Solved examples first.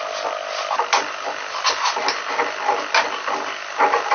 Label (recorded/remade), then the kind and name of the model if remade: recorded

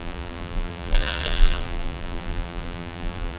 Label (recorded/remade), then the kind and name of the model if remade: remade, vocoder, BigVGAN v2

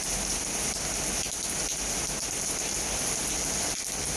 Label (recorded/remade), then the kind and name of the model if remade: recorded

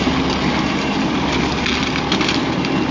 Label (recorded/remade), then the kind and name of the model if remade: recorded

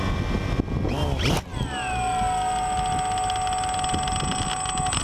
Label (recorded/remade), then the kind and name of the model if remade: recorded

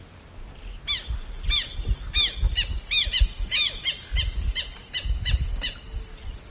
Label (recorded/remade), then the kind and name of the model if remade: recorded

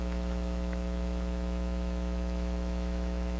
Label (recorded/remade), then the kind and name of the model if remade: remade, autoencoder, DAC-VAE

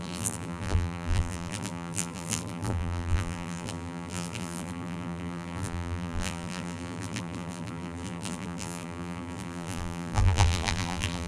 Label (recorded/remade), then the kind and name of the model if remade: remade, vocoder, BigVGAN v2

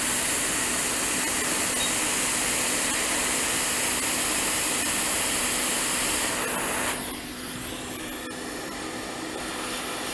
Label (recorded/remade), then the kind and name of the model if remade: recorded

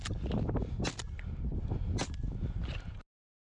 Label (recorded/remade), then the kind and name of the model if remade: recorded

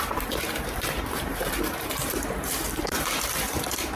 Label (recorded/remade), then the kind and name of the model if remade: remade, vocoder, BigVGAN v2